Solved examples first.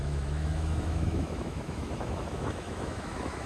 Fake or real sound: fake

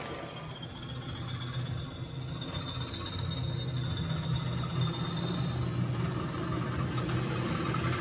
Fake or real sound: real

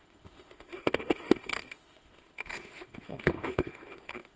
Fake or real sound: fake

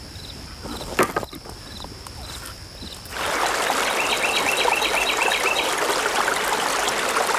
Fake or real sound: real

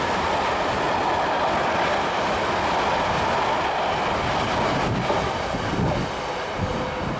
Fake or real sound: real